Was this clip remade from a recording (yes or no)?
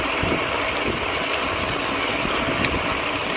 no